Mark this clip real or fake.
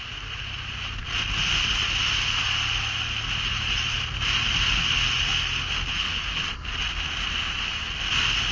real